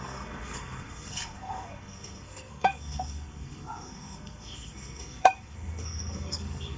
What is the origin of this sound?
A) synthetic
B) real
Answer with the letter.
A